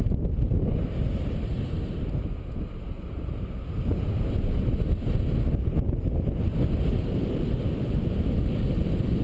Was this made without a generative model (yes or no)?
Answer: yes